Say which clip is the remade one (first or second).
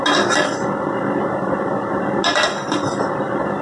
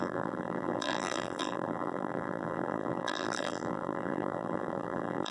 second